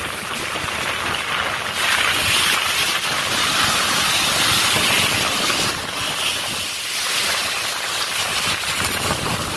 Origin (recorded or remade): recorded